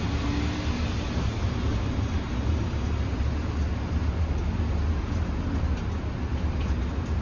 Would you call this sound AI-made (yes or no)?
no